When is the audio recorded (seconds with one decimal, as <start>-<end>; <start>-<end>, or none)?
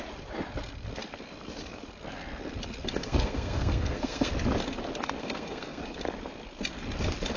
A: 0.0-3.0; 4.3-5.2; 5.8-7.4